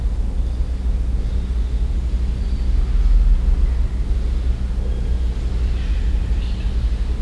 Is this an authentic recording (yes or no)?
yes